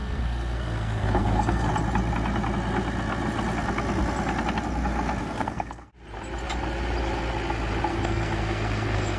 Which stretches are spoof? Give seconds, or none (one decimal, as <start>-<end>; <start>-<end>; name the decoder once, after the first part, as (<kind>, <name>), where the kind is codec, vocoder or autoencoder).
0.0-1.7 (codec, SNAC); 5.2-5.9; 7.9-9.2